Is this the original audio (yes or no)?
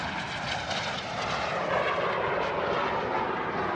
yes